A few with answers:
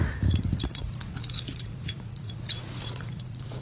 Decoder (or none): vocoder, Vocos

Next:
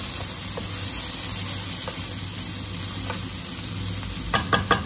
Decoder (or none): none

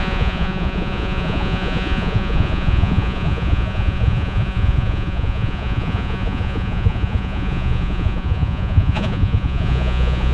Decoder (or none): vocoder, Vocos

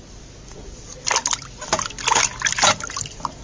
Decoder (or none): none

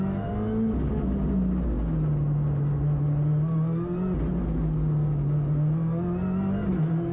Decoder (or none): none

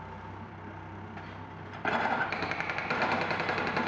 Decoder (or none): none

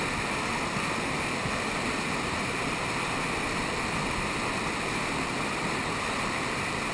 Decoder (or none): none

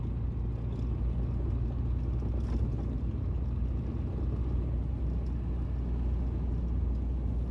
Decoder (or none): none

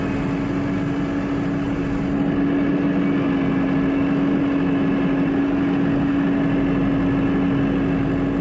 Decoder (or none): none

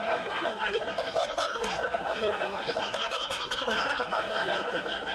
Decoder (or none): codec, SNAC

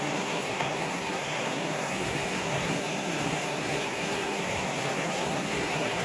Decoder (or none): codec, SNAC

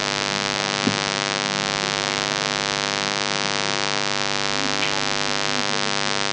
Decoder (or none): none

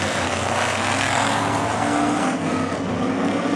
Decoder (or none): codec, SNAC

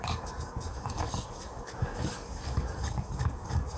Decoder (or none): codec, DAC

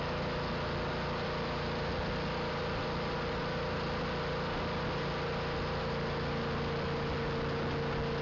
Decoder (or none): none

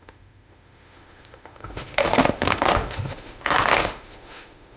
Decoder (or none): autoencoder, DAC-VAE